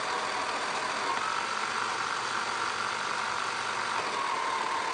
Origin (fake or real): real